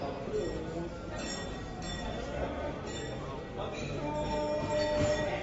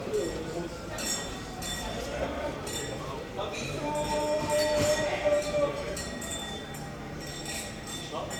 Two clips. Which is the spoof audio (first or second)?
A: second